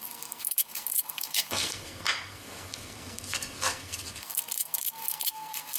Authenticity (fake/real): fake